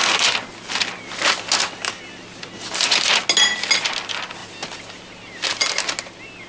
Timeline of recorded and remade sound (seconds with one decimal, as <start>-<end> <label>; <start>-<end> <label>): 0.0-6.5 recorded